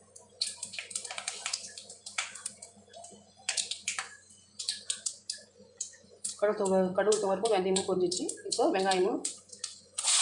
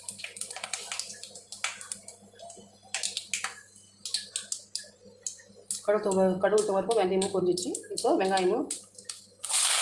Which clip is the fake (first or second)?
first